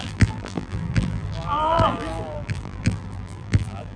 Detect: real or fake fake